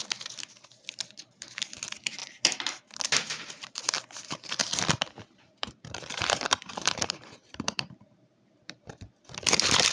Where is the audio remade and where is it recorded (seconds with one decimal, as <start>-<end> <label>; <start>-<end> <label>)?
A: 0.0-4.6 remade; 4.6-5.2 recorded; 5.2-9.9 remade